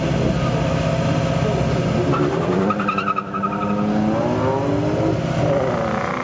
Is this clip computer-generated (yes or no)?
no